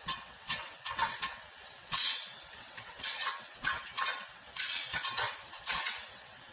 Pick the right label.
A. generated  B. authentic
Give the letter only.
A